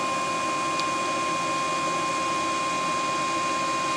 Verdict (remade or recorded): recorded